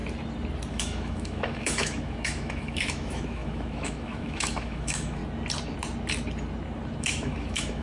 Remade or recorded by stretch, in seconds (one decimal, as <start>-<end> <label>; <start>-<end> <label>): 0.0-0.7 recorded; 0.7-5.2 remade; 5.2-7.0 recorded; 7.0-7.8 remade